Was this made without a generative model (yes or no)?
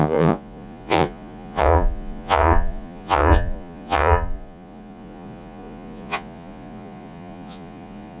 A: no